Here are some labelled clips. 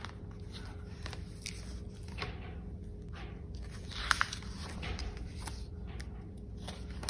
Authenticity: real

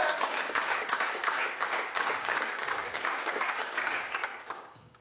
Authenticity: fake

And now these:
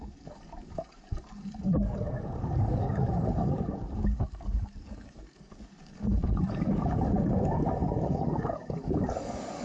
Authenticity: fake